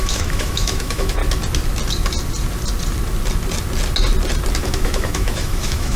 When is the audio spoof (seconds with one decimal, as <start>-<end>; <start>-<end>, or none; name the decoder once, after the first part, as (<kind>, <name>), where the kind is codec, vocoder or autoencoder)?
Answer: 0.0-1.2 (autoencoder, DAC-VAE); 4.6-6.0